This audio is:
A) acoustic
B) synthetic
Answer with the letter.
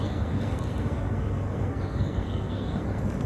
B